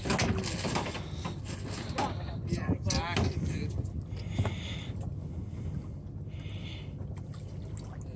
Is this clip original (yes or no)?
yes